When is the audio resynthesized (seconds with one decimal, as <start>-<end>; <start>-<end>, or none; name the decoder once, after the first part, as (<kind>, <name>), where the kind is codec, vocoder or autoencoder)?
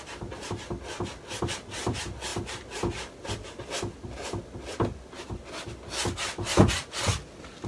none